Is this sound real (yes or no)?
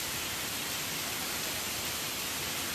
yes